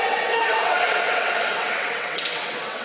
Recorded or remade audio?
remade